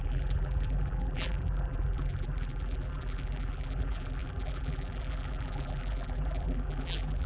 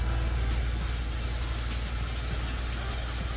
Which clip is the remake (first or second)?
first